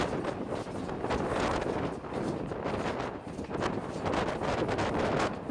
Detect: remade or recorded recorded